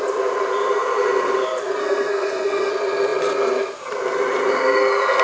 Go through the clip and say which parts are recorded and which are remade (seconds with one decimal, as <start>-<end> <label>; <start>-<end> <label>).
0.0-1.8 recorded; 1.8-2.7 remade; 2.7-5.2 recorded